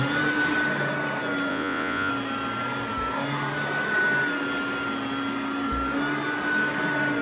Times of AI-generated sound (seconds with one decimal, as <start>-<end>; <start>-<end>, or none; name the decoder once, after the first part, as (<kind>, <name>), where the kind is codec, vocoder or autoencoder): 1.5-2.1 (vocoder, Vocos)